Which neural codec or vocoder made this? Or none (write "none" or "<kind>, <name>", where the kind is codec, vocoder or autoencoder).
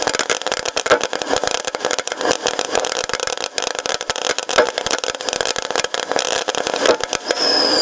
none